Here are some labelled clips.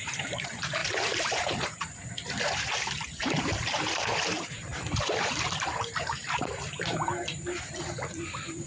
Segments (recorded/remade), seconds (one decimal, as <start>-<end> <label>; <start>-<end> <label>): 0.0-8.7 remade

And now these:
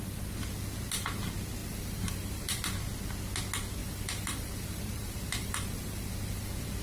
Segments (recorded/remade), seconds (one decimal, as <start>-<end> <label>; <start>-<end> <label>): 0.0-1.6 recorded; 1.6-2.4 remade; 2.4-3.8 recorded; 3.8-6.8 remade

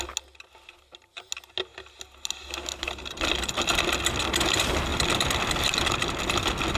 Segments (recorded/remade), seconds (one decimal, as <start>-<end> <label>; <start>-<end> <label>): 0.0-4.9 recorded; 4.9-6.2 remade; 6.2-6.8 recorded

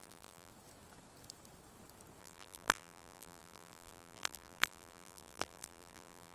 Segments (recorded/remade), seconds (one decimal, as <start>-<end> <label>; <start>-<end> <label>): 0.0-0.5 remade; 0.5-2.2 recorded; 2.2-6.3 remade